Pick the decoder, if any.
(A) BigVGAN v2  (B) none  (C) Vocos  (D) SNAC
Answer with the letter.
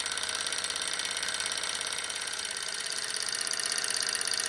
B